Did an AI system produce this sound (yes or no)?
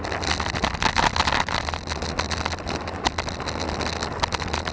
no